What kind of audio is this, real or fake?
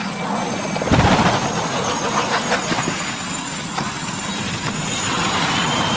real